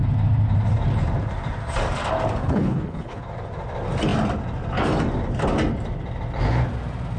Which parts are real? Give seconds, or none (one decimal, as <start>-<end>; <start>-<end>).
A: 0.0-2.4; 3.2-7.2